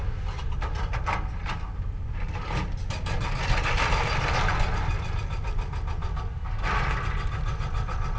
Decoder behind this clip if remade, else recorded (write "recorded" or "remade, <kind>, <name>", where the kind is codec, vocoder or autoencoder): recorded